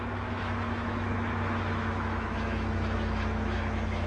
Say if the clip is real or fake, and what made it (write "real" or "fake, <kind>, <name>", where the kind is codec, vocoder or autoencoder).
fake, autoencoder, DAC-VAE